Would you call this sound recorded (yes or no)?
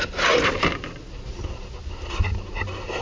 yes